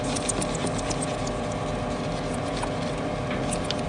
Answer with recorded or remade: recorded